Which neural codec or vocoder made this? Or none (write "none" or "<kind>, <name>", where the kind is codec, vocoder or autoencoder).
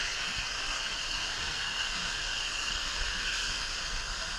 codec, SNAC